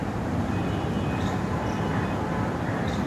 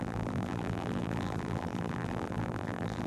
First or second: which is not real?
second